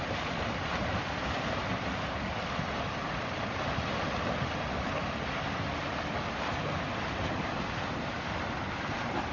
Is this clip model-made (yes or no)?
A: no